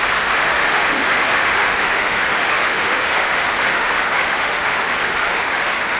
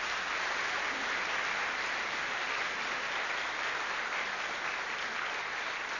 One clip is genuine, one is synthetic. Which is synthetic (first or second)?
first